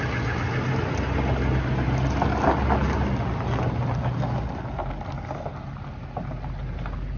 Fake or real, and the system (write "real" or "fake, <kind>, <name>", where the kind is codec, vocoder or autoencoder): real